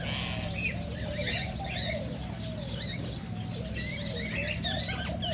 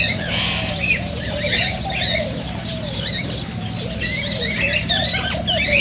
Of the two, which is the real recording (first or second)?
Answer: first